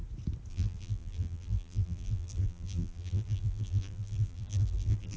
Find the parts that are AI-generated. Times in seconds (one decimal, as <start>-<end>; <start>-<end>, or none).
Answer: 0.5-5.2